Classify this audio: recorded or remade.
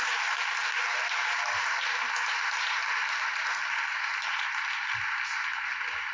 recorded